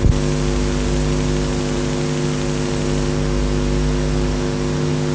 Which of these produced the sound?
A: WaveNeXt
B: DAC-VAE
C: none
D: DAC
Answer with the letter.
C